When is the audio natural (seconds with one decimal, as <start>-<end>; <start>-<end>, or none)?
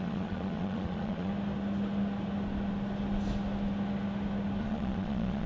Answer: 1.3-4.6